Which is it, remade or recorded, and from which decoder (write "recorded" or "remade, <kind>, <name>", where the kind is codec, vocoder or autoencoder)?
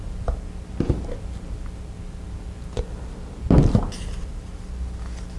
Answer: recorded